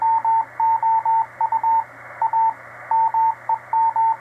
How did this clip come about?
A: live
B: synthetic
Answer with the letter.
A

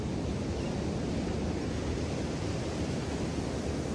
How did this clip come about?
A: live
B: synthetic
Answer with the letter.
A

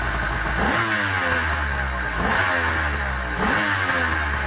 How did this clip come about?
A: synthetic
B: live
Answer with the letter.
B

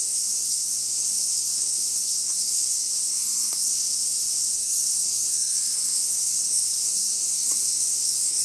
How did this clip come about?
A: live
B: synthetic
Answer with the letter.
B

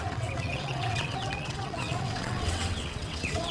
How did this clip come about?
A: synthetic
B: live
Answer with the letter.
A